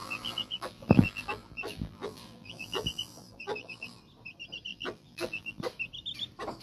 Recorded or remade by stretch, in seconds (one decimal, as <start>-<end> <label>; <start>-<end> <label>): 0.0-4.0 remade; 4.0-4.7 recorded; 4.7-5.6 remade; 5.6-6.6 recorded